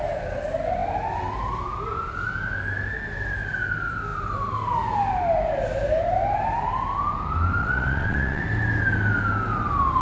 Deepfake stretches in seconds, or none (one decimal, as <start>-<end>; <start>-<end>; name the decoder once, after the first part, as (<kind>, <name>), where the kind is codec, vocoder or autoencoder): 7.6-8.4 (vocoder, Vocos)